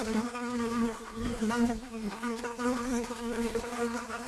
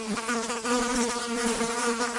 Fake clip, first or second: first